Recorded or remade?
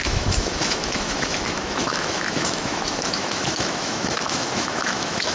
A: remade